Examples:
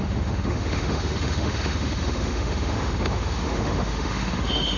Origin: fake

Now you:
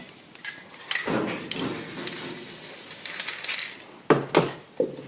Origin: real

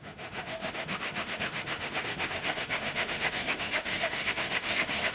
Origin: fake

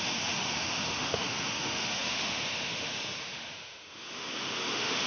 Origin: fake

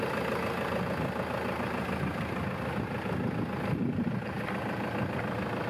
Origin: real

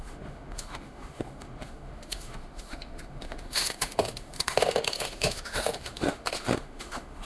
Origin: fake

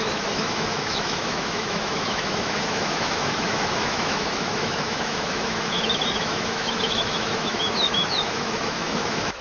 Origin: fake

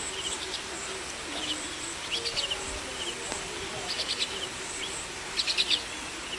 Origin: real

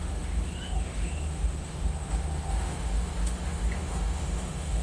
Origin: fake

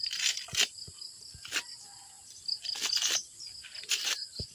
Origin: real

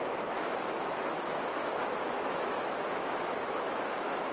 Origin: fake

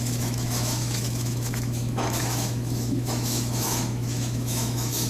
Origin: fake